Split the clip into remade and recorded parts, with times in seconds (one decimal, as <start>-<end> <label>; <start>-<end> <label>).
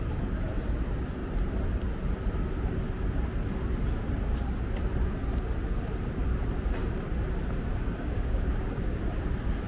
0.0-7.7 recorded; 7.7-9.0 remade; 9.0-9.7 recorded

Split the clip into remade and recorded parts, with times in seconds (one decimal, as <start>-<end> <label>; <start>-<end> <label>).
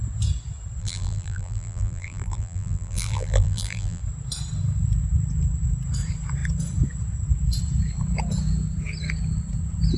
0.0-0.8 recorded; 0.8-4.0 remade; 4.0-10.0 recorded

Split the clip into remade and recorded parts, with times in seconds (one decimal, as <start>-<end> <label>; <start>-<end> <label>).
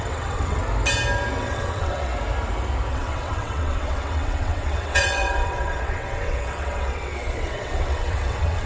0.0-0.6 remade; 0.6-1.4 recorded; 1.4-2.1 remade; 2.1-2.9 recorded; 2.9-8.7 remade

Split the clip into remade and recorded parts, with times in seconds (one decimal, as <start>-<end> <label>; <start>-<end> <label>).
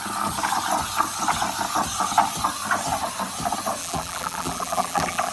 0.0-3.8 recorded; 3.8-5.3 remade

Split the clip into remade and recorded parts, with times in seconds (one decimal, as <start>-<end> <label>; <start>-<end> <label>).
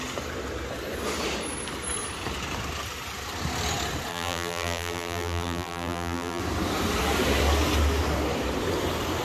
0.0-4.1 recorded; 4.1-6.4 remade; 6.4-9.2 recorded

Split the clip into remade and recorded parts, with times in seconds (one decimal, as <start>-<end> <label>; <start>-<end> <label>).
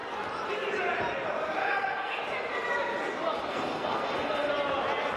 0.0-1.6 recorded; 1.6-2.2 remade; 2.2-3.5 recorded; 3.5-4.5 remade; 4.5-5.2 recorded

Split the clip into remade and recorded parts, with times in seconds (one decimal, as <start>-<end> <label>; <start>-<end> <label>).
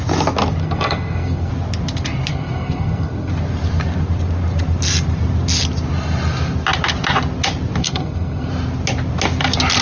0.0-0.6 recorded; 0.6-1.5 remade; 1.5-2.3 recorded; 2.3-3.3 remade; 3.3-7.8 recorded; 7.8-8.5 remade; 8.5-9.8 recorded